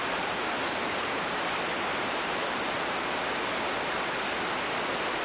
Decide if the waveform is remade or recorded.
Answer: recorded